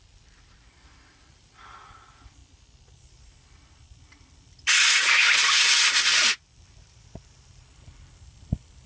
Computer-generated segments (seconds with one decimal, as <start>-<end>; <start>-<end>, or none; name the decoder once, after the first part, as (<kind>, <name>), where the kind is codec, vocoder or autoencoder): none